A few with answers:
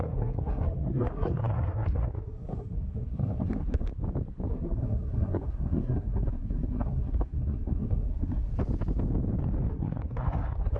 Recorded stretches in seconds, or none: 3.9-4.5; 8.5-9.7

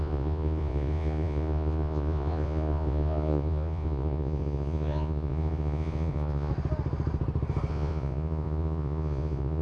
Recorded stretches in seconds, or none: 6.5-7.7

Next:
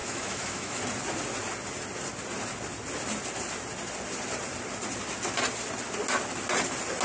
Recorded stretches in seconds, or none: 0.8-7.0

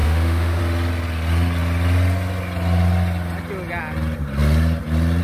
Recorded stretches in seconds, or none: 0.6-5.2